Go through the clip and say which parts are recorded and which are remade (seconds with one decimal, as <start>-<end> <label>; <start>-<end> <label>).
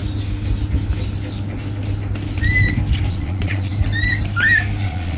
0.0-3.1 recorded; 3.1-3.7 remade; 3.7-4.8 recorded; 4.8-5.2 remade